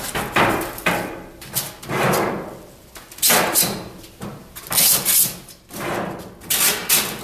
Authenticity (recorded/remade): recorded